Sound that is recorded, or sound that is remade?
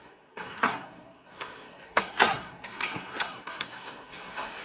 remade